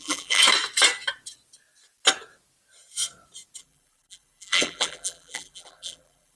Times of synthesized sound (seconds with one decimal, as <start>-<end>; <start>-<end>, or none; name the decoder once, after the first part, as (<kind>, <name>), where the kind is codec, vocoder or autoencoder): 0.0-0.4 (vocoder, BigVGAN v2); 3.6-6.4